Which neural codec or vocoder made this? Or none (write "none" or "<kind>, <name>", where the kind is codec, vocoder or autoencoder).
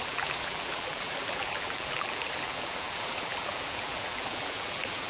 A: vocoder, BigVGAN v2